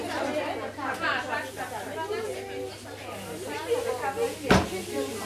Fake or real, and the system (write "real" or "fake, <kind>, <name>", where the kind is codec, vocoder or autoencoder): real